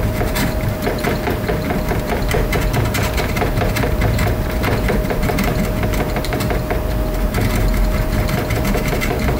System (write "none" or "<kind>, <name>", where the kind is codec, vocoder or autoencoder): vocoder, BigVGAN v2